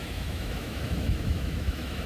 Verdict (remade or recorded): remade